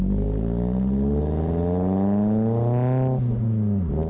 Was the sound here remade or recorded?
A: recorded